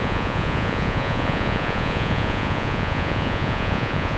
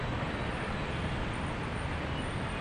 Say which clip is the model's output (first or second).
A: first